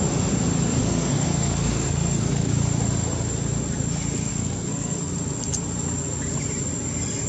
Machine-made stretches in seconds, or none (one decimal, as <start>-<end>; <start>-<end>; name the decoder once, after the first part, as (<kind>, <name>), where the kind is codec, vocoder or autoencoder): 0.8-2.5 (codec, SNAC); 4.3-5.1